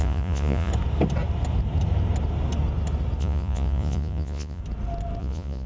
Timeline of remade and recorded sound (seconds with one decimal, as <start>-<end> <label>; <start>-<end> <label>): 0.0-0.7 remade; 0.7-3.2 recorded; 3.2-4.6 remade; 4.6-5.2 recorded; 5.2-5.7 remade